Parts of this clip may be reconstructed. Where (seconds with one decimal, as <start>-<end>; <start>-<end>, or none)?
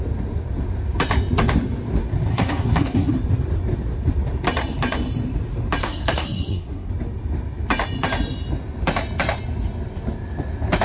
2.3-3.1; 5.8-6.9